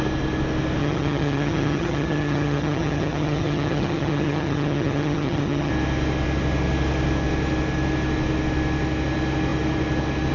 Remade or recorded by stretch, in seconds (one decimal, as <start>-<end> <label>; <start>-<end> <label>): 0.0-0.8 recorded; 0.8-5.7 remade; 5.7-10.3 recorded